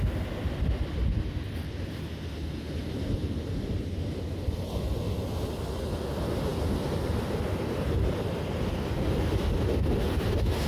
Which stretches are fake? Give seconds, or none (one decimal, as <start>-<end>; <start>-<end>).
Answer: none